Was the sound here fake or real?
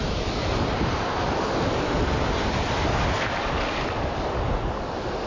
real